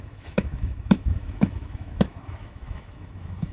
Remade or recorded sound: remade